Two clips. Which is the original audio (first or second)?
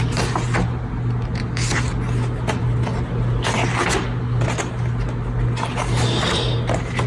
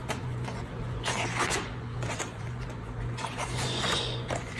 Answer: first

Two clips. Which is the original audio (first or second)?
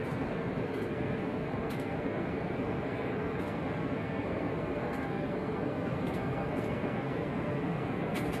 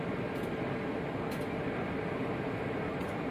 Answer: second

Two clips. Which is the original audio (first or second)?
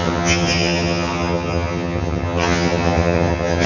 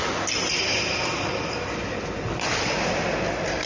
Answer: second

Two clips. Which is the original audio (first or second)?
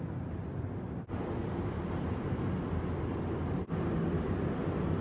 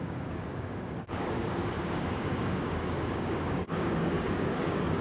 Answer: first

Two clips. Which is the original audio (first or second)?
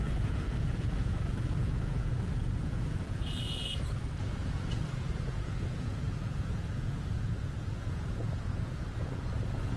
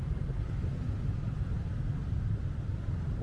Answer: second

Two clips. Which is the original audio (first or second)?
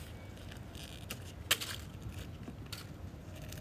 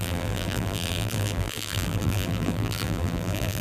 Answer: first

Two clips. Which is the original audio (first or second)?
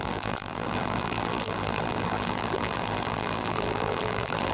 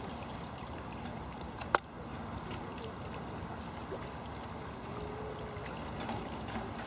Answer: second